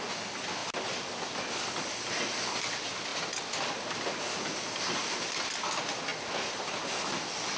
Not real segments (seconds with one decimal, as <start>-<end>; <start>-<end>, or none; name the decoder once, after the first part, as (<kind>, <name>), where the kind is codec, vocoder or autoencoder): none